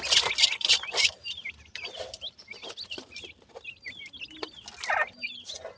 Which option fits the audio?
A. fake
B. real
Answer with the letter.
B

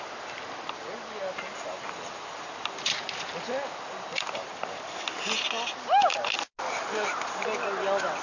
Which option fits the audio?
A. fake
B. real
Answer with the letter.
B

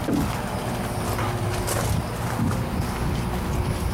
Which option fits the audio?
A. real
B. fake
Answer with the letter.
A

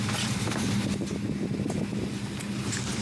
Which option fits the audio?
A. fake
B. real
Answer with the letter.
B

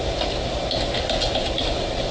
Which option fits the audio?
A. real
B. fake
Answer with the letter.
A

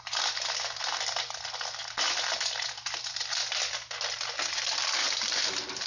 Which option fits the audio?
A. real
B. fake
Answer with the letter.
A